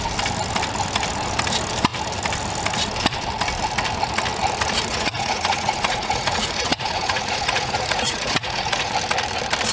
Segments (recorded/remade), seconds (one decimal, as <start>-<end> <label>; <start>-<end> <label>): 0.0-4.9 recorded; 4.9-8.9 remade; 8.9-9.7 recorded